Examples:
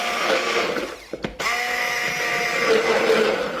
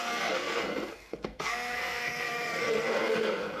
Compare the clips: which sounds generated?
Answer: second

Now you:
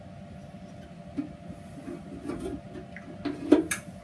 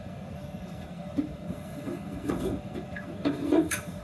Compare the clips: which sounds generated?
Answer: second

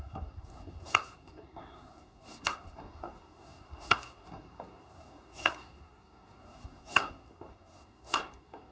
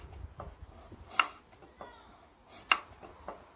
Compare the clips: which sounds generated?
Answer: first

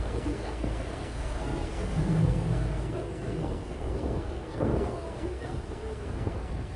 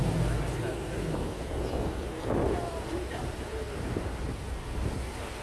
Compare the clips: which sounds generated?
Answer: first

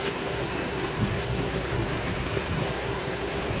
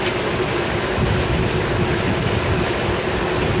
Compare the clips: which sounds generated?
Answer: first